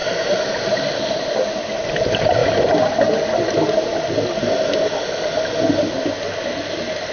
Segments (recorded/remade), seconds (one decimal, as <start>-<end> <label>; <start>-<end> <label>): 0.0-7.1 recorded